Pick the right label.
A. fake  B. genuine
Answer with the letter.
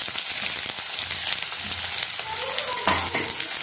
B